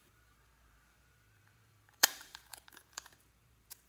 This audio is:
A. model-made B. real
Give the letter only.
A